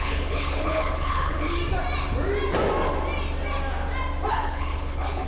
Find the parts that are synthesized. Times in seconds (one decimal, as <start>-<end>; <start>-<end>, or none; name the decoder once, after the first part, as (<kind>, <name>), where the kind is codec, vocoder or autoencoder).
0.0-1.6 (codec, HILCodec); 4.3-5.3